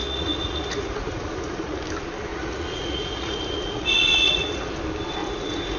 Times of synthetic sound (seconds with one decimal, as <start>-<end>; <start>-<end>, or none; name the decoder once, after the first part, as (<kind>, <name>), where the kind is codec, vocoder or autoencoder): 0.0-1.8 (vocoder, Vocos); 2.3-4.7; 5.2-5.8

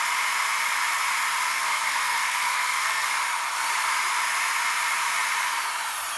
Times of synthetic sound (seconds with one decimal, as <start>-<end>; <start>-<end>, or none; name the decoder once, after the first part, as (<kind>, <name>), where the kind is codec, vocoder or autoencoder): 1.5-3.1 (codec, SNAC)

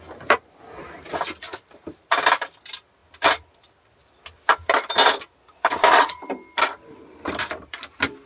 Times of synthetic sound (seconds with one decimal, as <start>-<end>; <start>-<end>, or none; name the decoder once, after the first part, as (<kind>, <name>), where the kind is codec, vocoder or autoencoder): 3.0-4.1 (vocoder, BigVGAN v2)

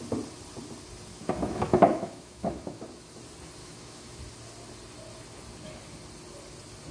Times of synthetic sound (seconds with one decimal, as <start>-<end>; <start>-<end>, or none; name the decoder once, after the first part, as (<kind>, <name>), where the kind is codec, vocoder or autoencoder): 1.1-2.8 (autoencoder, DAC-VAE); 3.6-4.2

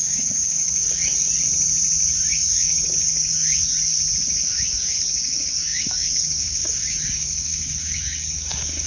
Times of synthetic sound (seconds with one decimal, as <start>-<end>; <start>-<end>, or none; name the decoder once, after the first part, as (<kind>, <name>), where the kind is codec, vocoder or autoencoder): 0.0-1.1 (codec, DAC); 2.3-3.7; 4.2-8.9